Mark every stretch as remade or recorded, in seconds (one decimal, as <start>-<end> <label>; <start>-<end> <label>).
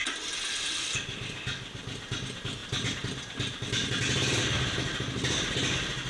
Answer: 0.0-6.1 recorded